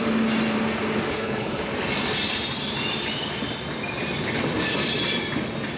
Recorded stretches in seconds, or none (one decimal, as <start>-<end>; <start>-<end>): 0.0-1.1; 1.6-5.8